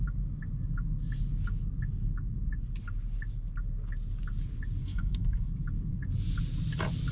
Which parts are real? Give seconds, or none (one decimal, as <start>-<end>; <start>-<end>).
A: 0.0-4.8; 5.5-7.1